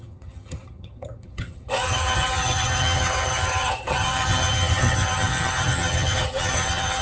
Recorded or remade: remade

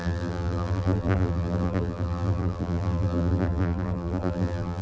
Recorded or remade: remade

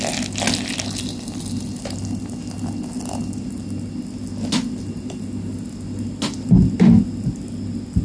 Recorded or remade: recorded